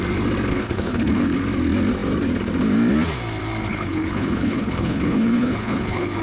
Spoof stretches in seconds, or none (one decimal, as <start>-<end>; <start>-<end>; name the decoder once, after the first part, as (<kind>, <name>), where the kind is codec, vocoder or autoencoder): 0.5-1.4 (codec, HILCodec); 3.7-6.2